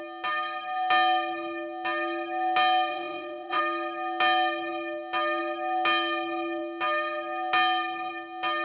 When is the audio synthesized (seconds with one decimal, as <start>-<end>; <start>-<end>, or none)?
2.9-3.6